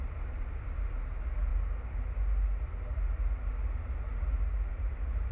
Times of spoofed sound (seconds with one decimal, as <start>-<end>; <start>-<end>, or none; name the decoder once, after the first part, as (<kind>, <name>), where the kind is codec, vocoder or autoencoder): none